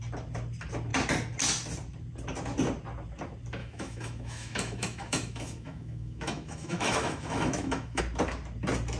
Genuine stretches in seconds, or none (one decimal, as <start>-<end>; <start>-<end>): 0.0-3.6; 8.0-9.0